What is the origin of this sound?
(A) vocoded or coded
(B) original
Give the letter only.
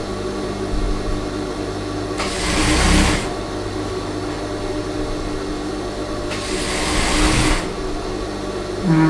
B